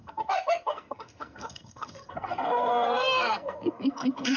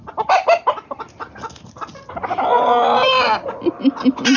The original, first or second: second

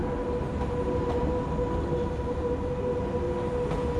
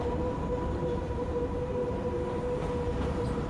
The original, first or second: first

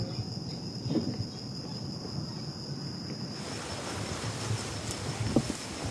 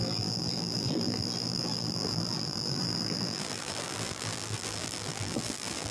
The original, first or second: first